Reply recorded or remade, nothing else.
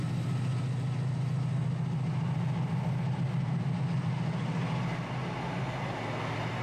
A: recorded